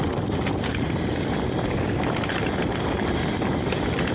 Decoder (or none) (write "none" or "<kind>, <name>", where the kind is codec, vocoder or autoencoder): none